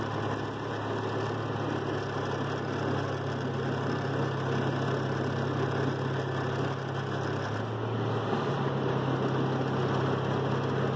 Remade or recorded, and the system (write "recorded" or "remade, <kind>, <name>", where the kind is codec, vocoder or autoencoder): recorded